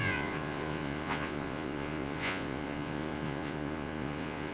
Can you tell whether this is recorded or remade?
remade